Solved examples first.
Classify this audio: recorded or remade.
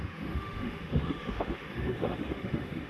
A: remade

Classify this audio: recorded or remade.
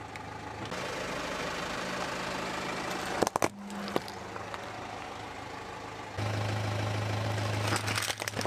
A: recorded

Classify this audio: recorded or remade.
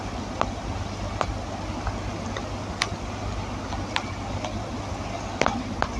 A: recorded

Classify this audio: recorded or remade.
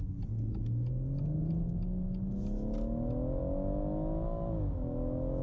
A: recorded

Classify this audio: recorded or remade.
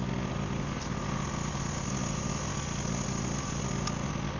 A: recorded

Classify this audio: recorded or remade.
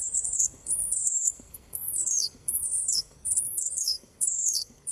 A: remade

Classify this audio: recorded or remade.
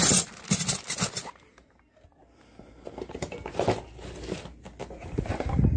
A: recorded